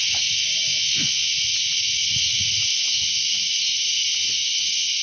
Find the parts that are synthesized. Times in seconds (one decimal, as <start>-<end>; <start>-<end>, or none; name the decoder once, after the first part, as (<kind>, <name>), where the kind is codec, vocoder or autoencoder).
0.7-1.3 (vocoder, Vocos)